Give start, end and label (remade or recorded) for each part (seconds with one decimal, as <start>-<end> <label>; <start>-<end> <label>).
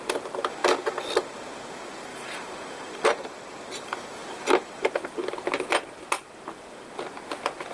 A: 0.0-2.1 recorded; 2.1-2.9 remade; 2.9-7.7 recorded